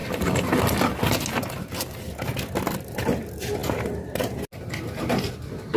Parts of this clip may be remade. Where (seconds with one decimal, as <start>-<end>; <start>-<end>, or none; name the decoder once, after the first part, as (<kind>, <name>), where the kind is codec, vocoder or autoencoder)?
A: 0.0-0.6 (vocoder, BigVGAN v2)